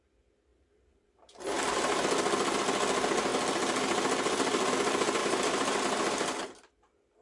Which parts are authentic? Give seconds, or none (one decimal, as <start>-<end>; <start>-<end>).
0.0-0.5; 2.0-5.2; 5.8-7.2